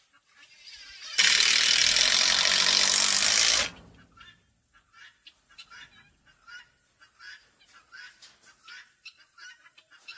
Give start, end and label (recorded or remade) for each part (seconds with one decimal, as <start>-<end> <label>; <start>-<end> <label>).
0.0-10.2 recorded